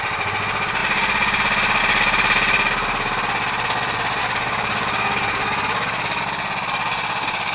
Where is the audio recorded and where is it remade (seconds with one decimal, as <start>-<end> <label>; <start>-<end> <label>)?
0.0-4.2 recorded; 4.2-6.2 remade; 6.2-7.5 recorded

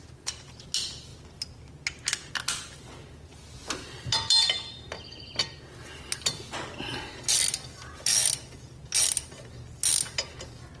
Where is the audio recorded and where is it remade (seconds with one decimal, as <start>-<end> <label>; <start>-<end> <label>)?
0.0-10.8 recorded

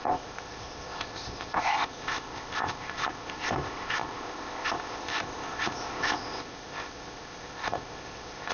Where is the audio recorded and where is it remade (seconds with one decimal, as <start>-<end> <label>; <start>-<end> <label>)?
0.0-8.5 remade

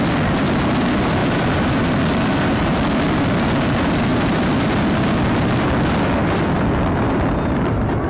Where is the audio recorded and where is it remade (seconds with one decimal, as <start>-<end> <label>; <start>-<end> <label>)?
0.0-1.2 recorded; 1.2-2.6 remade; 2.6-4.1 recorded; 4.1-4.8 remade; 4.8-6.2 recorded; 6.2-6.7 remade; 6.7-8.1 recorded

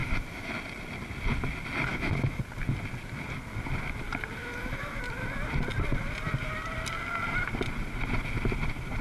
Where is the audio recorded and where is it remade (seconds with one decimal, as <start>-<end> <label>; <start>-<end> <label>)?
0.0-0.5 remade; 0.5-1.9 recorded; 1.9-2.4 remade; 2.4-4.4 recorded; 4.4-5.0 remade; 5.0-9.0 recorded

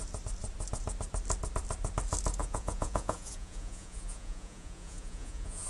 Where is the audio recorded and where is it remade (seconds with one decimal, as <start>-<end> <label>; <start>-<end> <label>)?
0.0-2.4 recorded; 2.4-5.7 remade

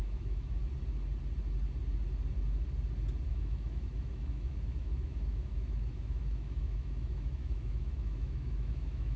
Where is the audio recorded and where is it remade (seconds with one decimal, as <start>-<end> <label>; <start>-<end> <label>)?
0.0-0.6 remade; 0.6-3.3 recorded; 3.3-9.2 remade

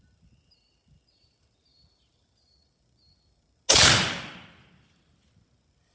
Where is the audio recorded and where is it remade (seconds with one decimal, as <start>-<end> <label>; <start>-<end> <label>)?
0.0-5.9 recorded